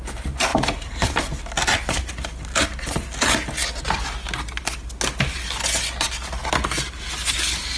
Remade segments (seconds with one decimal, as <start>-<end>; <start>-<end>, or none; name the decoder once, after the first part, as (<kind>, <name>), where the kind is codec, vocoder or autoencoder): 0.5-1.2 (vocoder, BigVGAN v2)